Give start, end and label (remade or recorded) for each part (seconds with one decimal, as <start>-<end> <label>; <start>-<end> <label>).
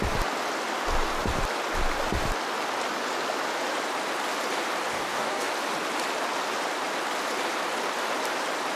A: 0.0-4.9 recorded; 4.9-5.5 remade; 5.5-8.8 recorded